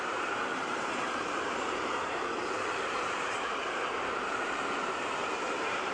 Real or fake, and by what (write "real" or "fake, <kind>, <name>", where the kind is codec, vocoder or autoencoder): fake, vocoder, BigVGAN v2